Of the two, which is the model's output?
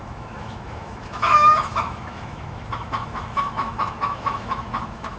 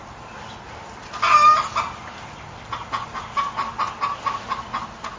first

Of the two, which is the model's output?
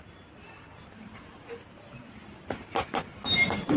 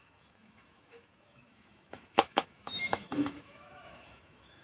second